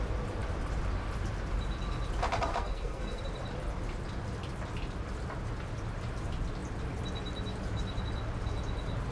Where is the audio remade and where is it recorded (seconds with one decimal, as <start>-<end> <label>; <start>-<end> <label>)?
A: 0.0-2.5 recorded; 2.5-3.2 remade; 3.2-9.1 recorded